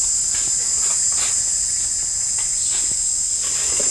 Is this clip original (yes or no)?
yes